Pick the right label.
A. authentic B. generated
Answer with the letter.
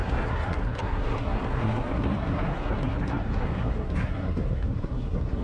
B